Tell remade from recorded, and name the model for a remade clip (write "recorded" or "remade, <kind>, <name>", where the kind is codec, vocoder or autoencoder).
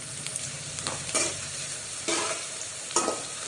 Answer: remade, vocoder, BigVGAN v2